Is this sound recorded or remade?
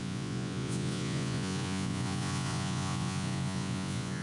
remade